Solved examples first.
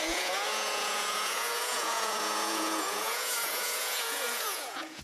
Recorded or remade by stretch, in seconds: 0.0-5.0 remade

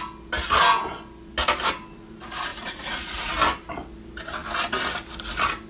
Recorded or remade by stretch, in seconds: 0.0-2.5 recorded; 2.5-3.3 remade; 3.3-5.7 recorded

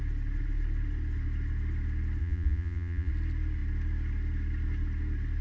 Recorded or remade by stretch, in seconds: 0.0-2.2 recorded; 2.2-3.1 remade; 3.1-5.4 recorded

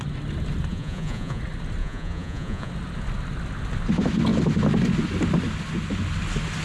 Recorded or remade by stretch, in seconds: 0.0-0.7 recorded; 0.7-1.4 remade; 1.4-1.8 recorded; 1.8-2.7 remade; 2.7-6.6 recorded

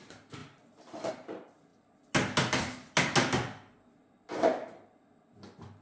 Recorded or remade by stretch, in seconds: 0.0-5.8 recorded